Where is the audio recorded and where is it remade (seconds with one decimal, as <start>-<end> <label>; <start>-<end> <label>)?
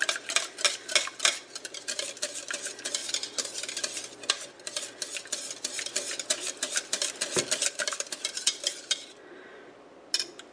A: 0.0-10.5 recorded